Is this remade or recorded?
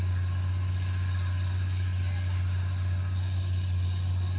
recorded